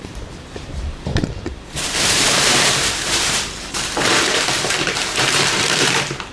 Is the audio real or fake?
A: fake